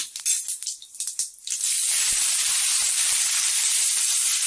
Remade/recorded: remade